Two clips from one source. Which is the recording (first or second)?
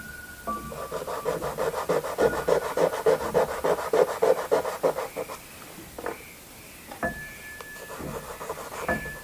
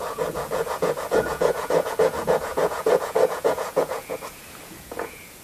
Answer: first